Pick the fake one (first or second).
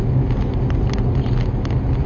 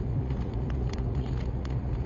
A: second